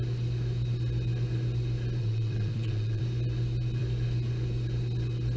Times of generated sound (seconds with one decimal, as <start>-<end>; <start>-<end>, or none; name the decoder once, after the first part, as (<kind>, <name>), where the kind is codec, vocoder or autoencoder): 2.0-3.0 (vocoder, WaveNeXt)